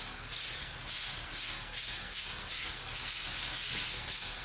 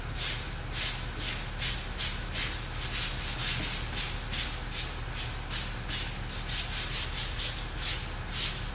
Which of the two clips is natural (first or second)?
second